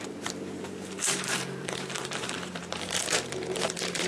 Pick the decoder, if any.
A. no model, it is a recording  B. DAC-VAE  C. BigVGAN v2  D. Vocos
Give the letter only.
C